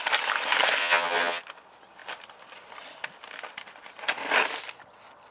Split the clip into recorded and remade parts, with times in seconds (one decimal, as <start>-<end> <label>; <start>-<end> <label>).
0.0-0.8 recorded; 0.8-1.4 remade; 1.4-5.3 recorded